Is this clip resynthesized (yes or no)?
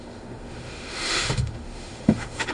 yes